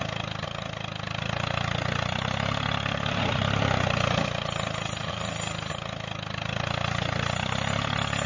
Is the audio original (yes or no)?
yes